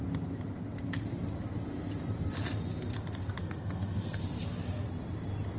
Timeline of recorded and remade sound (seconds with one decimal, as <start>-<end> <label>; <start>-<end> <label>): 0.0-3.4 recorded; 3.4-4.2 remade; 4.2-5.6 recorded

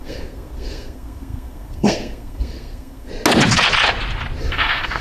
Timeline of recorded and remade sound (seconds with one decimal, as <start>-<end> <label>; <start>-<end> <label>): 0.0-3.1 remade; 3.1-4.4 recorded; 4.4-5.0 remade

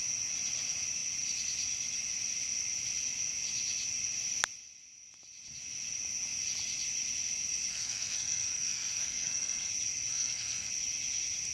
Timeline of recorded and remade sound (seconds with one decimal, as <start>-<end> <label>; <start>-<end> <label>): 0.0-7.7 recorded; 7.7-9.7 remade; 9.7-10.1 recorded; 10.1-10.7 remade; 10.7-11.5 recorded